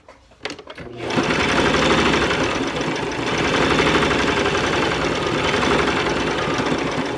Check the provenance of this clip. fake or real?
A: real